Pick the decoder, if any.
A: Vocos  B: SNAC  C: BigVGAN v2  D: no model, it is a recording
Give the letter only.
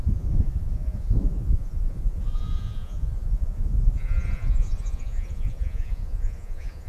A